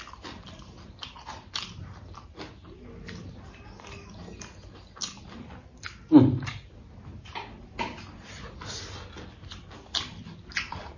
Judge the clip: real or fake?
real